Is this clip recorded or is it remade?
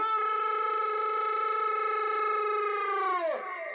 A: recorded